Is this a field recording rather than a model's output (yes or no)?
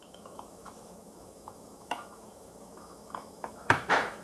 no